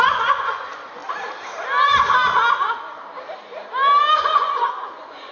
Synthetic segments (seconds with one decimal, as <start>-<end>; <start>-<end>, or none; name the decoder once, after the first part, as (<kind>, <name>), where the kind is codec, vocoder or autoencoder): 0.0-1.0 (vocoder, Vocos); 4.2-5.3